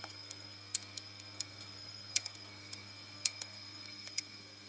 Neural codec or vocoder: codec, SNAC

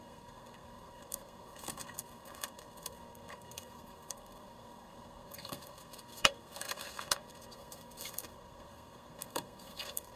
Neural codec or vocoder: codec, SNAC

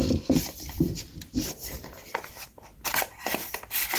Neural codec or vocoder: vocoder, BigVGAN v2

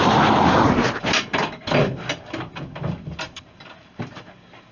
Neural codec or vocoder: none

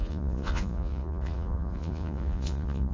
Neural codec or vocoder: vocoder, Vocos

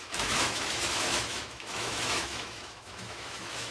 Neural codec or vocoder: autoencoder, DAC-VAE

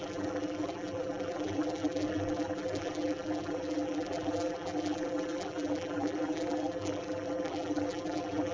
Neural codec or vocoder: vocoder, BigVGAN v2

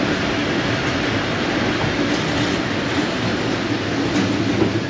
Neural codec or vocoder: none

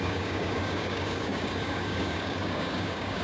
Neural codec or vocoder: codec, DAC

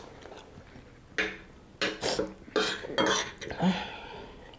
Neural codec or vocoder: none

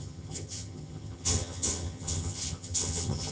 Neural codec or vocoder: vocoder, HiFi-GAN